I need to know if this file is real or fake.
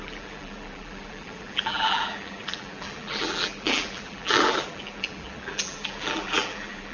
fake